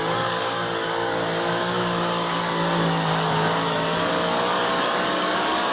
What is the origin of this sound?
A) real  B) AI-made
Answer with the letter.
B